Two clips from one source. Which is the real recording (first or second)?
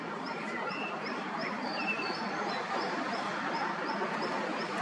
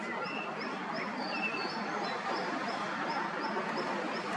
second